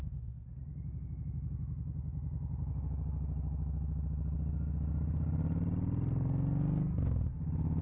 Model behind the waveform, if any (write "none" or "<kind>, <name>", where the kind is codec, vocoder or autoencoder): none